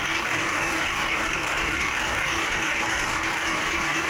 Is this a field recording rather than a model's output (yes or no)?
no